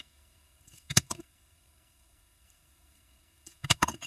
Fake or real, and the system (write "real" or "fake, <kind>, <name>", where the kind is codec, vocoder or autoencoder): fake, codec, SNAC